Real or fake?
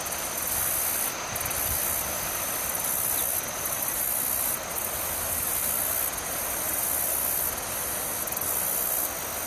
real